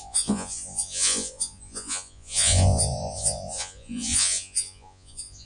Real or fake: fake